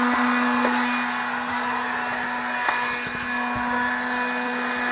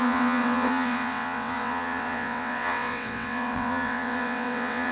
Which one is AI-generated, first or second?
second